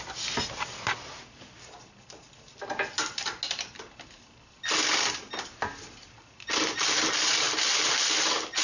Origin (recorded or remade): recorded